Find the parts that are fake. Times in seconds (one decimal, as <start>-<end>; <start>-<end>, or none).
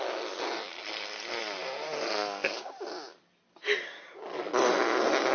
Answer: none